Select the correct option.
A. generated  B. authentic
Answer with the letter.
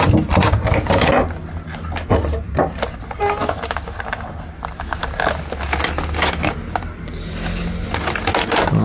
B